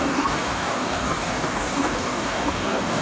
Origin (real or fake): fake